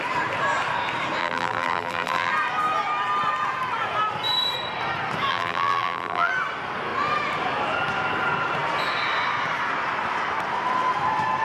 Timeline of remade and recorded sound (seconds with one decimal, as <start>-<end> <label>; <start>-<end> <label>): 0.0-1.2 recorded; 1.2-2.3 remade; 2.3-5.3 recorded; 5.3-6.3 remade; 6.3-11.4 recorded